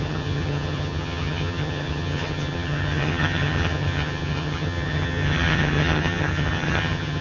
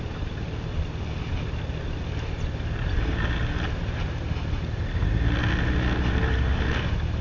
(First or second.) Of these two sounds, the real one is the second